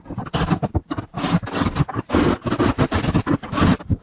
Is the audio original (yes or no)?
yes